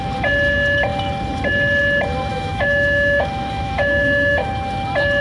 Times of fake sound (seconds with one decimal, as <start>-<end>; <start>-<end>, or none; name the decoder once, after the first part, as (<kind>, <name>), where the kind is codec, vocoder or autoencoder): 2.3-4.5 (autoencoder, DAC-VAE)